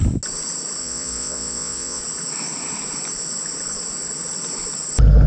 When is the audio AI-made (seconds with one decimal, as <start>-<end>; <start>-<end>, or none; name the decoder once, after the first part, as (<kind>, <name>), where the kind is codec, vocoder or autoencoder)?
0.8-2.0 (vocoder, Vocos)